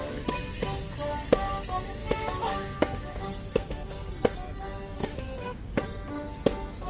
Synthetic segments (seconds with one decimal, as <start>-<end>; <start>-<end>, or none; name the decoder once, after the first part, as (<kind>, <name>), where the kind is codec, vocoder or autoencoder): 2.0-4.1 (codec, DAC); 5.0-5.8